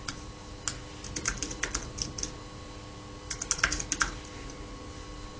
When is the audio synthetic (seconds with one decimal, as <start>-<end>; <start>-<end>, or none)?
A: none